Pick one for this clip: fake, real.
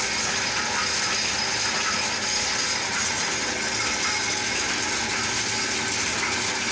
real